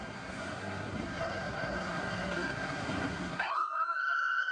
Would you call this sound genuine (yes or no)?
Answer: no